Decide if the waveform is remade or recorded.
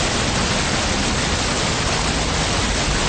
recorded